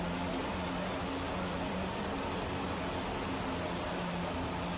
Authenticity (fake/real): real